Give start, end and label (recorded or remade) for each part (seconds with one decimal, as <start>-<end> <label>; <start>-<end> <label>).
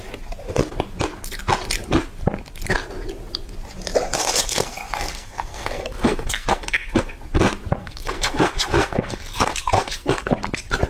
0.0-4.1 recorded; 4.1-7.2 remade; 7.2-7.8 recorded; 7.8-10.3 remade; 10.3-10.9 recorded